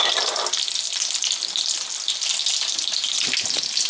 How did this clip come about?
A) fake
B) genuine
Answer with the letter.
B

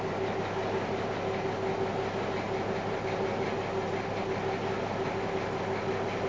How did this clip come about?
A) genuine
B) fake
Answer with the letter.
A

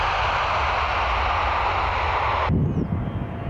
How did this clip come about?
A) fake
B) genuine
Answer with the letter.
B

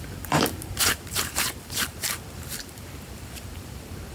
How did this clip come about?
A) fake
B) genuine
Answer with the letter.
A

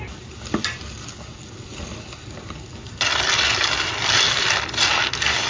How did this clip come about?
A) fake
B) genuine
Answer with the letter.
B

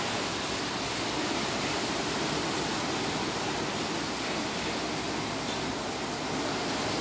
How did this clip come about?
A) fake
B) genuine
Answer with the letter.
B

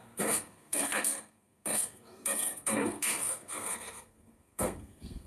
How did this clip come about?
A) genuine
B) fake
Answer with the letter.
B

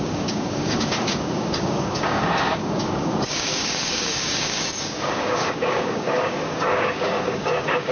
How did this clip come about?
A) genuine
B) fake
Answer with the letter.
B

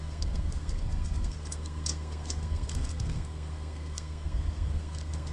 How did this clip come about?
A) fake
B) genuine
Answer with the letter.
A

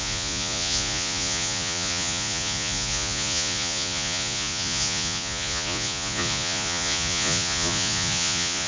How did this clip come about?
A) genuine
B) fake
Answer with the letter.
B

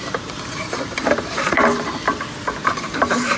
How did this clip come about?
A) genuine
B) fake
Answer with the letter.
B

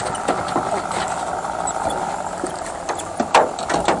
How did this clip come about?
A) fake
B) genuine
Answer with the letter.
B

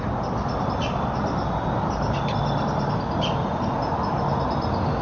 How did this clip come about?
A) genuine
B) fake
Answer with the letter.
A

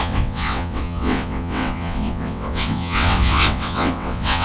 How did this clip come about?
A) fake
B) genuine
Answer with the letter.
A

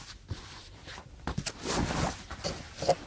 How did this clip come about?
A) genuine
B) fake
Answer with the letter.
B